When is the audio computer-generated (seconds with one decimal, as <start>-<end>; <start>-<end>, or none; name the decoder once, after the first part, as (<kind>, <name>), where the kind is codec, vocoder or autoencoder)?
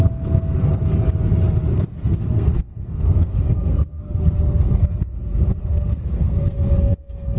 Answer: 0.0-0.8 (codec, SNAC); 1.7-7.4